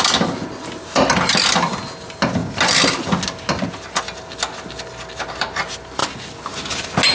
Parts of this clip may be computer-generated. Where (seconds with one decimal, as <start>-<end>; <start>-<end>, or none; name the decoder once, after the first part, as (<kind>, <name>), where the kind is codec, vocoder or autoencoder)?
none